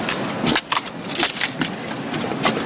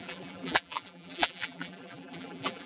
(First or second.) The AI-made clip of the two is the second